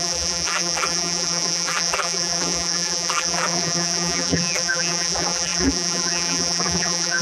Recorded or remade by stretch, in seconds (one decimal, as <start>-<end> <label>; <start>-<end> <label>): 0.0-7.2 remade